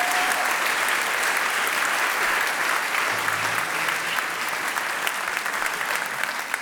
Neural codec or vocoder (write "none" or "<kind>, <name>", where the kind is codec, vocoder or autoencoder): none